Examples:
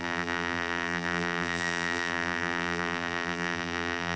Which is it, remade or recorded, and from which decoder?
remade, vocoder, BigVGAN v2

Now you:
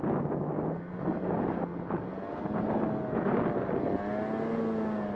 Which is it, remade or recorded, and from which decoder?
recorded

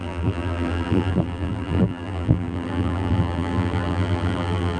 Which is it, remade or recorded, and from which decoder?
remade, vocoder, BigVGAN v2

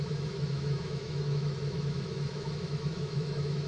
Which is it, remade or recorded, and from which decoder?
remade, autoencoder, DAC-VAE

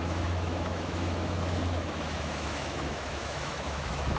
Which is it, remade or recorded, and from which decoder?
remade, autoencoder, DAC-VAE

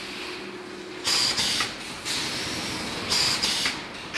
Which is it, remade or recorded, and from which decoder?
recorded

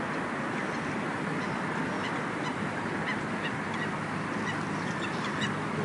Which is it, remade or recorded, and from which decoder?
recorded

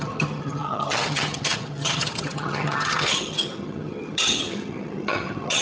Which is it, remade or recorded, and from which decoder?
remade, vocoder, HiFi-GAN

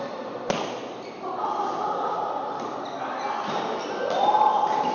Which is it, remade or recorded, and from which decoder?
recorded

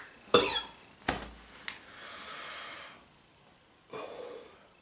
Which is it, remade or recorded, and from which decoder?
recorded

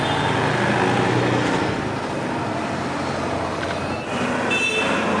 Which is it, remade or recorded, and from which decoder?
recorded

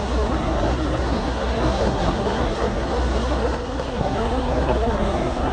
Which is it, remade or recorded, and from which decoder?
remade, codec, SNAC